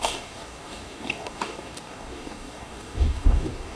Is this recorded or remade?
remade